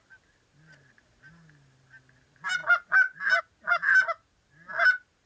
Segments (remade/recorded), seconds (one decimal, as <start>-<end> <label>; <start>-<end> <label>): 0.0-5.3 recorded